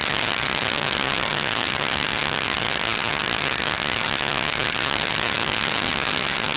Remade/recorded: remade